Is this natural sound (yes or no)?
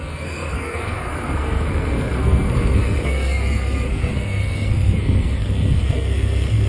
no